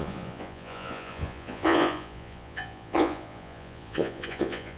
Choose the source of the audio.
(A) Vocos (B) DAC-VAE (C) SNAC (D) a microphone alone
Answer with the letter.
A